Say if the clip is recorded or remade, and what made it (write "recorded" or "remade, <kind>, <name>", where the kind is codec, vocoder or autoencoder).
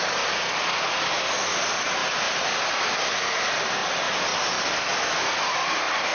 recorded